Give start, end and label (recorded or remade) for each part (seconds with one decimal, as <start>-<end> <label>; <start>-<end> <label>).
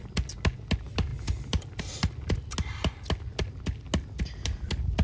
0.0-5.0 recorded